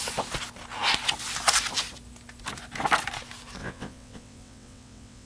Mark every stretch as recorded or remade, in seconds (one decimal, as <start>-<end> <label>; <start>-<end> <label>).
0.0-3.6 recorded; 3.6-5.3 remade